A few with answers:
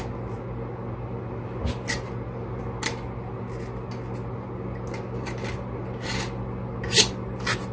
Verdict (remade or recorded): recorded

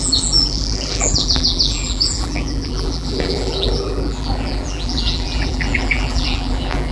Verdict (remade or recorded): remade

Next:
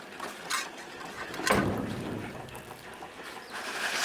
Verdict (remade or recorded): recorded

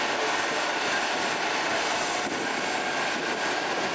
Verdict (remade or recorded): recorded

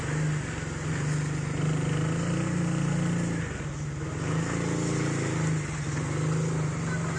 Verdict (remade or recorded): recorded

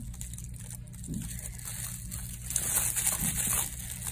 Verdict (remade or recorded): recorded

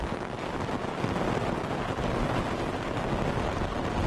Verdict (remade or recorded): recorded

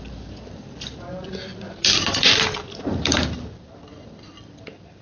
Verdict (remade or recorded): remade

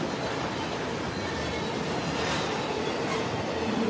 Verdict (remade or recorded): recorded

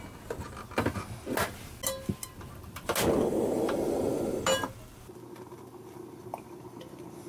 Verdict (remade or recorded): recorded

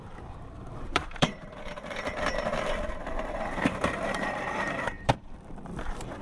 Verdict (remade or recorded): remade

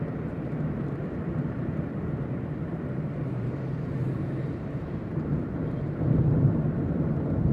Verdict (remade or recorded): remade